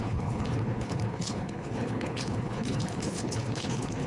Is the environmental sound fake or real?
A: fake